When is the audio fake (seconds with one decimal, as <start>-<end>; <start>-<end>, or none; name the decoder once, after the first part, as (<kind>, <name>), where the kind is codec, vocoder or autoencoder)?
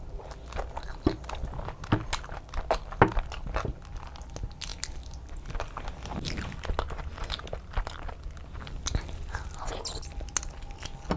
none